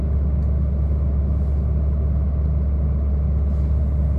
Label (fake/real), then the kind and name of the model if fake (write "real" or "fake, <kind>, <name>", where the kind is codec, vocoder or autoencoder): real